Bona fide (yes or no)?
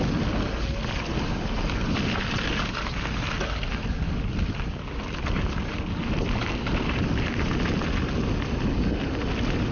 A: yes